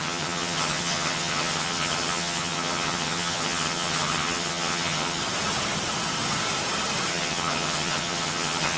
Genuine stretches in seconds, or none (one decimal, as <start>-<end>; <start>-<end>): 5.2-7.1